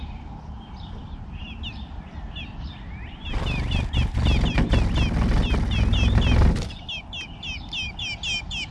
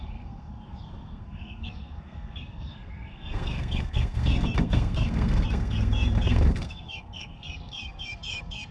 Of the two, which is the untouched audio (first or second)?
first